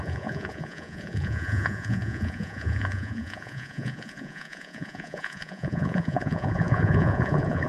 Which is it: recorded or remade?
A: remade